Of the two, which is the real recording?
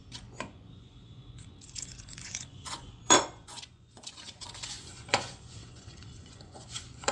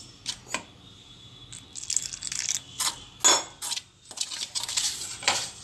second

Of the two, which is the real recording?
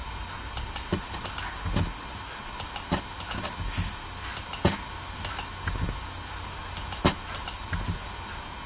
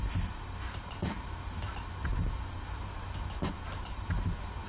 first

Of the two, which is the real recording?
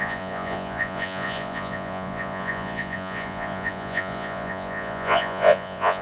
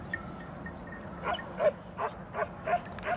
second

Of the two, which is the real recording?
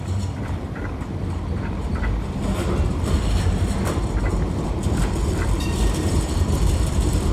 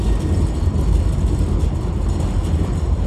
second